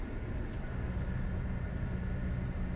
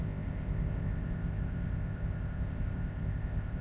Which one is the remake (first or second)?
second